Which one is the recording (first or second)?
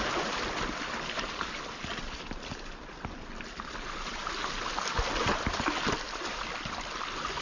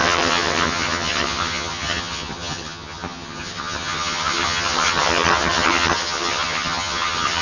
first